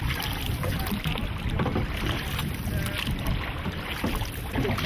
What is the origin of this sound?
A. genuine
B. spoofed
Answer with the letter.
A